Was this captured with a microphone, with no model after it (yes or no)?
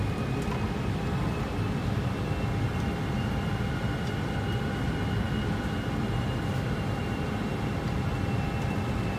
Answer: yes